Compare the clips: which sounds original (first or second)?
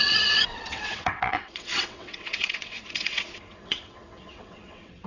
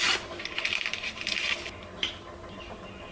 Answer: second